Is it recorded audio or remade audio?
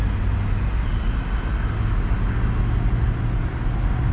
recorded